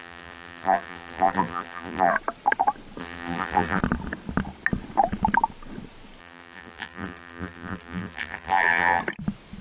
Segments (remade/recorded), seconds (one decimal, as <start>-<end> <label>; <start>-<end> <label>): 0.0-2.1 remade; 2.1-3.0 recorded; 3.0-3.8 remade; 3.8-6.2 recorded; 6.2-9.0 remade; 9.0-9.6 recorded